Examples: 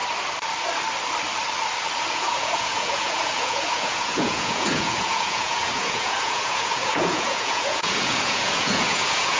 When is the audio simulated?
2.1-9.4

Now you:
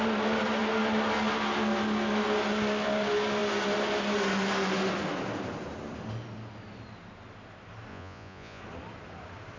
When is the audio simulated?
7.9-8.6

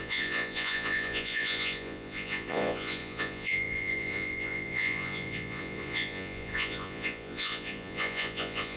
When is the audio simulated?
0.0-8.8

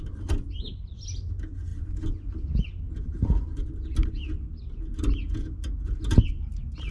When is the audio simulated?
none

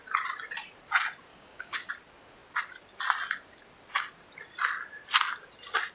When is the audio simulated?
1.3-1.9